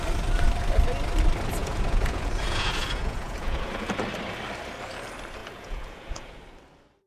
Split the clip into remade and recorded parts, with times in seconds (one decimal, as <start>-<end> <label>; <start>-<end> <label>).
0.0-1.6 recorded; 1.6-3.9 remade; 3.9-5.4 recorded; 5.4-6.3 remade; 6.3-7.1 recorded

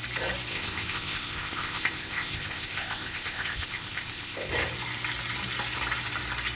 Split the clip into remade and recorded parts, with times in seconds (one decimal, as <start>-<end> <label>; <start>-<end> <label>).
0.0-0.5 recorded; 0.5-4.5 remade; 4.5-6.6 recorded